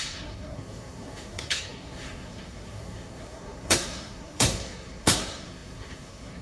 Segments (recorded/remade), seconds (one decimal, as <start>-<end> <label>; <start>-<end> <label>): 0.0-6.4 remade